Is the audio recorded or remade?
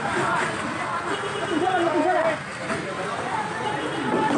recorded